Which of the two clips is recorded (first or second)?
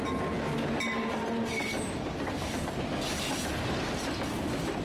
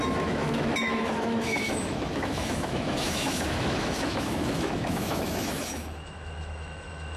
first